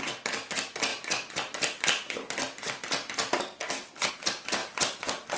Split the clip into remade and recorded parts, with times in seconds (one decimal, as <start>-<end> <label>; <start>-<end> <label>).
0.0-0.9 recorded; 0.9-4.1 remade; 4.1-4.6 recorded; 4.6-5.4 remade